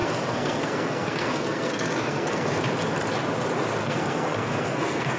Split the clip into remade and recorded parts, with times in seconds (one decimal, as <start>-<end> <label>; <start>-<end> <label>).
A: 0.0-2.6 remade; 2.6-3.8 recorded; 3.8-5.2 remade